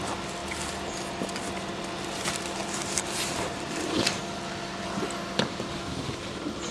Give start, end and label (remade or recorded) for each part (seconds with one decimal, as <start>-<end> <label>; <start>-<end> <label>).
0.0-2.6 recorded; 2.6-4.2 remade; 4.2-6.7 recorded